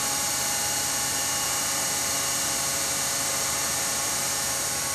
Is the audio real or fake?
fake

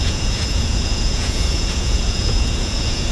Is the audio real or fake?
fake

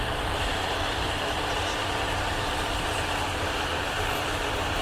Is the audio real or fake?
fake